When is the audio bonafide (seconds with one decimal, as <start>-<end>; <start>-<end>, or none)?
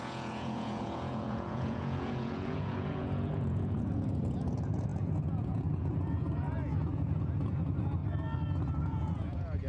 8.0-8.8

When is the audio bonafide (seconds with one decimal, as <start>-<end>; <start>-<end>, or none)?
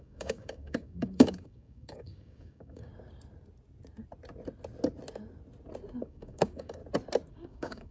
2.9-6.0; 6.8-7.3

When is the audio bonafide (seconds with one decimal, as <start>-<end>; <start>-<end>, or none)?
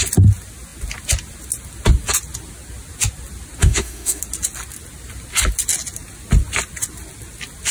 0.0-3.6; 4.2-7.7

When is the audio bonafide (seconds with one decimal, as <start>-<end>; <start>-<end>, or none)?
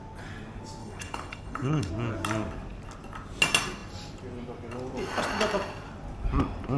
0.0-0.8; 1.9-6.8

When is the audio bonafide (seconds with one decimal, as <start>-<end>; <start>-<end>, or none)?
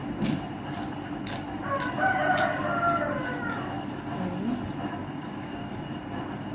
0.0-5.0; 5.7-6.5